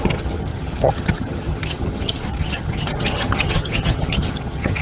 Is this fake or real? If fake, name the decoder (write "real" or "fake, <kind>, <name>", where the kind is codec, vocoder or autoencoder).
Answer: fake, vocoder, HiFi-GAN